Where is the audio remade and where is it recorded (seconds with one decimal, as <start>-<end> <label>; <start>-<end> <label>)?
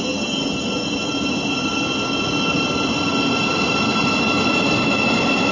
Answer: 0.0-5.5 recorded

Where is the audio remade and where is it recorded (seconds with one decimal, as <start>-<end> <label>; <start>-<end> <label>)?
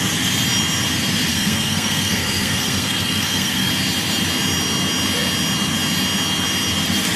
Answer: 0.0-1.3 recorded; 1.3-3.7 remade; 3.7-7.2 recorded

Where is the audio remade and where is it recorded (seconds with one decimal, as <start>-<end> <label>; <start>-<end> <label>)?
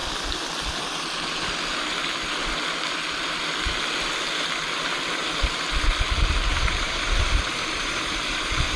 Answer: 0.0-6.5 recorded; 6.5-8.8 remade